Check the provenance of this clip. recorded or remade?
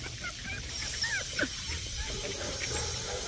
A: recorded